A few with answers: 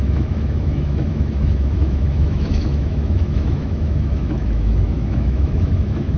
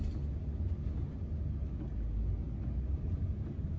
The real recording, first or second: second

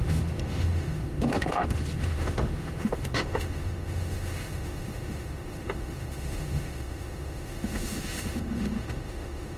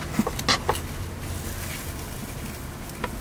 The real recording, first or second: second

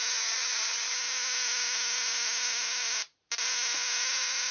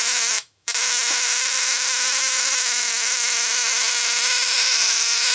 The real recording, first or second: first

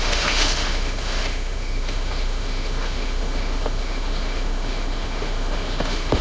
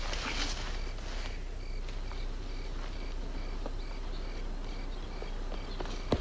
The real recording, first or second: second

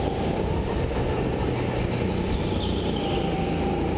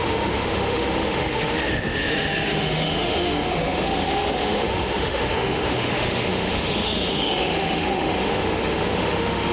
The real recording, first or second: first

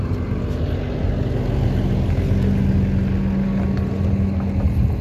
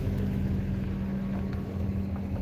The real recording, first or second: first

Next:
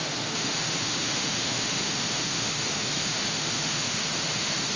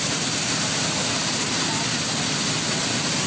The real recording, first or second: second